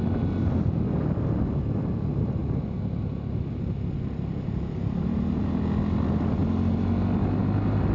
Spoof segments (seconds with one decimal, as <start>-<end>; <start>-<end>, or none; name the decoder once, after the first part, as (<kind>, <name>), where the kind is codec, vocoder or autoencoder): none